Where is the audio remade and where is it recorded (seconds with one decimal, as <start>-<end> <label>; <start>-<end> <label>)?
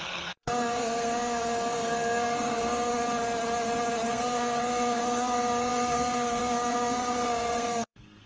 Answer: 0.0-2.9 remade; 2.9-4.1 recorded; 4.1-8.3 remade